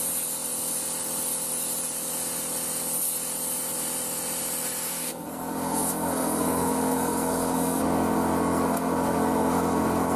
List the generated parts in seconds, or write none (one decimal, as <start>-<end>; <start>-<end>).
4.9-10.2